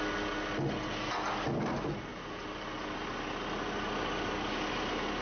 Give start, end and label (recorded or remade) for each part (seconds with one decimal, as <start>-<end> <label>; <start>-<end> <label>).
0.0-5.2 recorded